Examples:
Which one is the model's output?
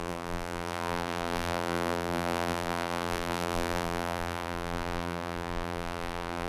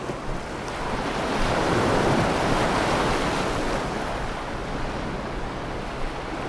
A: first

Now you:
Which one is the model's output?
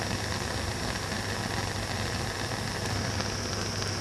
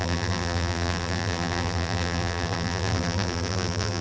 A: second